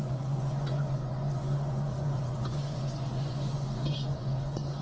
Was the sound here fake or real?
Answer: fake